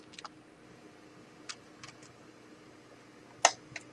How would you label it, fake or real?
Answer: real